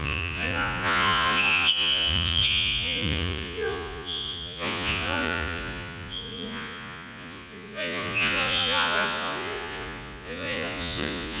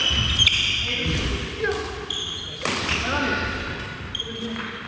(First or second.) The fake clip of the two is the first